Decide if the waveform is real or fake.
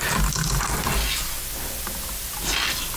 real